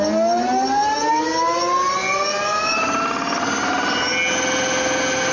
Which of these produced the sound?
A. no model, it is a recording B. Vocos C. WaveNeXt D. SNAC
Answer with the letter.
A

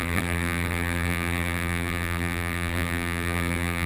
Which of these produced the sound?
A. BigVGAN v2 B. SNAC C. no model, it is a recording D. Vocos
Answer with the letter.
A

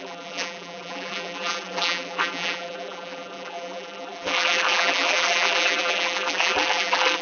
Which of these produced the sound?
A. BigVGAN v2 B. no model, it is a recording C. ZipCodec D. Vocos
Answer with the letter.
A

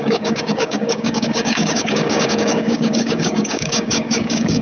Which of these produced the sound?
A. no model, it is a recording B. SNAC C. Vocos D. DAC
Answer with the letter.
D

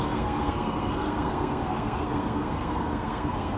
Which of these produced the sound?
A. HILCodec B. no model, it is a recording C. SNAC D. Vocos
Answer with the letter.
C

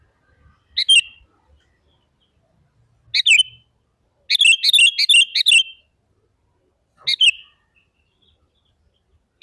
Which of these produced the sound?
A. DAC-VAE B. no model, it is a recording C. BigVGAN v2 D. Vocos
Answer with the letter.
B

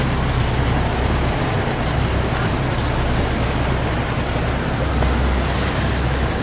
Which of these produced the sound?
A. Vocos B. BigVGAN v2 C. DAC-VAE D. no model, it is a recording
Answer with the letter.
D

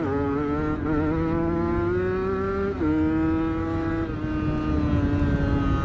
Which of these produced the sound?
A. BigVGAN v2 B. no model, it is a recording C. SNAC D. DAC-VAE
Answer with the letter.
B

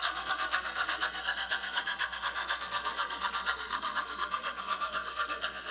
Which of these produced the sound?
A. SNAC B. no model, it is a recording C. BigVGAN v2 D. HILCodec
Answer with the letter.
A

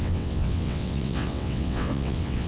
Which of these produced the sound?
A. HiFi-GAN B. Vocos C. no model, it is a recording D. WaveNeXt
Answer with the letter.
D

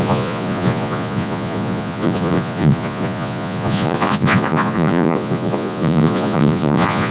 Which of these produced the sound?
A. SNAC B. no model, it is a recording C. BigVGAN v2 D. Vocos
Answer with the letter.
D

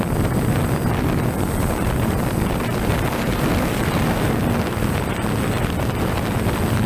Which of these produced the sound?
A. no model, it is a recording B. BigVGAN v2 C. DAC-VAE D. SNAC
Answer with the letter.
A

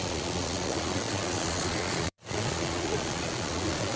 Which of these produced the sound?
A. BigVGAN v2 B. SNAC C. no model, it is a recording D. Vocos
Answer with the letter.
D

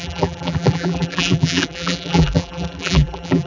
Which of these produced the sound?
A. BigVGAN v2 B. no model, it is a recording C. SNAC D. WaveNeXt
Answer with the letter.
A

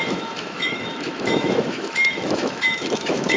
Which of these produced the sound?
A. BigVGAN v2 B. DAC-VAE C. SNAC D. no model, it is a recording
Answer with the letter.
B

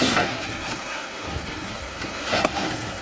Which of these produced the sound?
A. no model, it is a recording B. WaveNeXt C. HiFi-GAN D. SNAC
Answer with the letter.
D